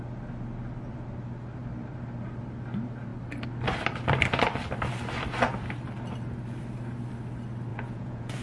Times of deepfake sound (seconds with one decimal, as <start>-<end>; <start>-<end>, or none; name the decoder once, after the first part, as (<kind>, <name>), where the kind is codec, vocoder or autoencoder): 7.7-8.4 (vocoder, Vocos)